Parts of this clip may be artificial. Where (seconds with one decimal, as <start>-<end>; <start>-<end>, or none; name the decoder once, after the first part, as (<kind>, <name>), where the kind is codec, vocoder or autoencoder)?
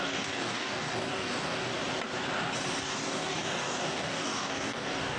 0.0-1.7 (codec, DAC); 2.8-5.2